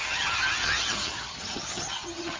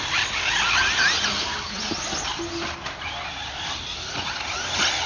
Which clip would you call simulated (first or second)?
first